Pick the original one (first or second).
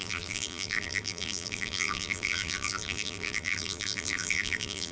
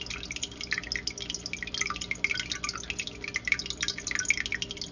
second